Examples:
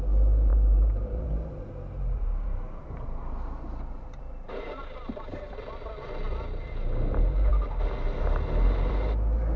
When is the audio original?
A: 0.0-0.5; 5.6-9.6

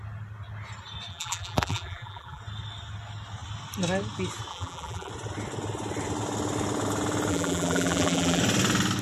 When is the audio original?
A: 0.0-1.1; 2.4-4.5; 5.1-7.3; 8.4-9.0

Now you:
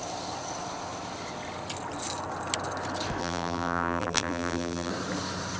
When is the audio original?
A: 0.0-3.2; 4.9-5.6

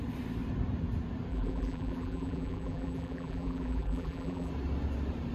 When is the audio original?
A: 0.0-1.3; 4.5-5.3

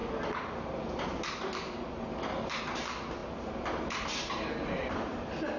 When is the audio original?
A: 0.0-5.6